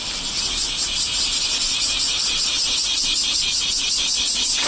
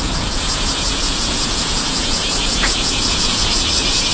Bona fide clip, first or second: first